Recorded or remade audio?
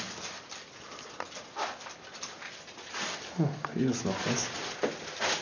recorded